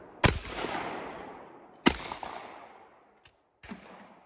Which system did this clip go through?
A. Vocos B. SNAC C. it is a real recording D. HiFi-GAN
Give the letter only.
C